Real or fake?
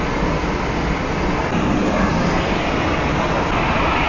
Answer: real